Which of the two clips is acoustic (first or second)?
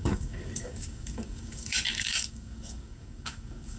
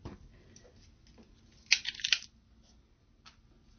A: second